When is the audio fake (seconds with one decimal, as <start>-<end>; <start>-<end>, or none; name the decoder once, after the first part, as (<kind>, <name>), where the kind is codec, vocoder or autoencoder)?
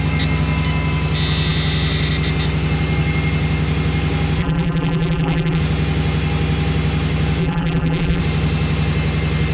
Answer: 4.4-5.6 (vocoder, BigVGAN v2); 7.4-8.2